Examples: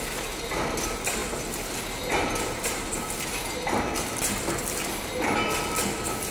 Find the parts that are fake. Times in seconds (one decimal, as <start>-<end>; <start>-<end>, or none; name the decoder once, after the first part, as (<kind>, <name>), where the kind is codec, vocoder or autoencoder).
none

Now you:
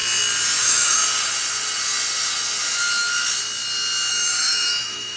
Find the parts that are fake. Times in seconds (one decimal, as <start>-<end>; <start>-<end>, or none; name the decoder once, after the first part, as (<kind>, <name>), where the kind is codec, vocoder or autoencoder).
0.6-1.0 (autoencoder, DAC-VAE); 4.1-5.2

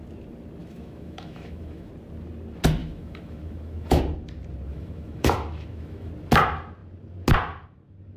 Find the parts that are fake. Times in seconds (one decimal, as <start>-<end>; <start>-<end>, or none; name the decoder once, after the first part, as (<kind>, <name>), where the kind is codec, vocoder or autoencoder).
0.6-1.9 (autoencoder, DAC-VAE); 2.8-4.0; 4.7-6.1